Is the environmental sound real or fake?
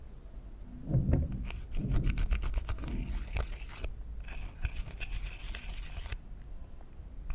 real